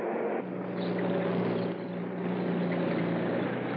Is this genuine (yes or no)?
yes